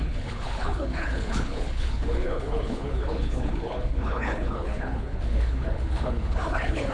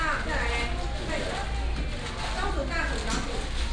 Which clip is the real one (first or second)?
second